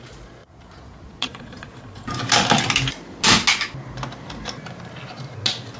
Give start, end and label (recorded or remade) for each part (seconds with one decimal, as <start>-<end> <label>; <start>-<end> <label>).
0.0-0.4 recorded; 0.4-1.8 remade; 1.8-5.8 recorded